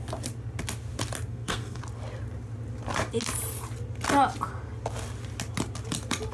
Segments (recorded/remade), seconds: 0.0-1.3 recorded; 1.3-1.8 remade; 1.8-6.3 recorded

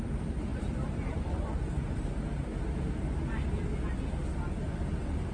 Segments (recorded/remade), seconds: 0.0-2.5 remade; 2.5-5.3 recorded

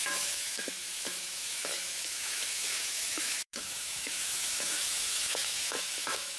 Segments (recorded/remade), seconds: 0.0-6.4 remade

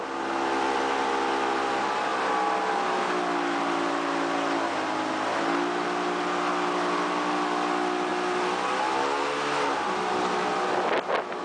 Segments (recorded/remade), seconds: 0.0-11.4 recorded

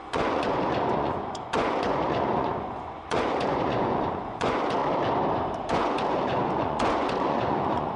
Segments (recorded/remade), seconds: 0.0-4.8 remade; 4.8-5.7 recorded; 5.7-8.0 remade

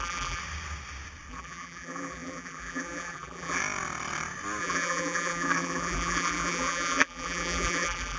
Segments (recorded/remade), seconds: 0.0-0.4 remade; 0.4-1.3 recorded; 1.3-3.6 remade; 3.6-4.6 recorded; 4.6-8.2 remade

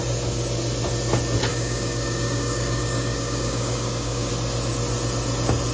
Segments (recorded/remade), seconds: 0.0-1.5 recorded; 1.5-4.3 remade; 4.3-5.7 recorded